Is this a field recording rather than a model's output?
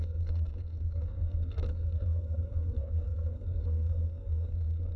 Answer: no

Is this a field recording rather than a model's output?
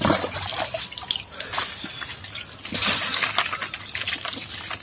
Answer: yes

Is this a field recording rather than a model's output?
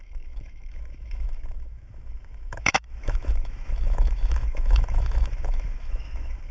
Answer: no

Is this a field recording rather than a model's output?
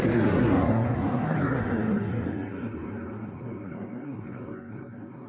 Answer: no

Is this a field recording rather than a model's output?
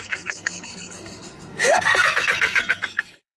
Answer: no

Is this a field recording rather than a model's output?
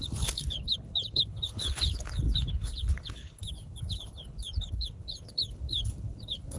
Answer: no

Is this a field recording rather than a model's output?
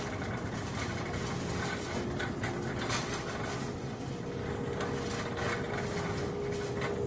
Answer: yes